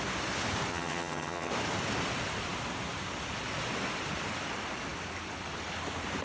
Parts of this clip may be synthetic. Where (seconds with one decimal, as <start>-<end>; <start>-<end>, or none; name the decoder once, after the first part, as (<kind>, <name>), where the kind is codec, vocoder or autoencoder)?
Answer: 0.7-1.5 (vocoder, HiFi-GAN)